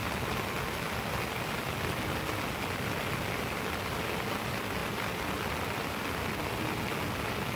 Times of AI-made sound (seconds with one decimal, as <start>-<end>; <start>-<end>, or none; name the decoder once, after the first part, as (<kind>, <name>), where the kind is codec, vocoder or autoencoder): none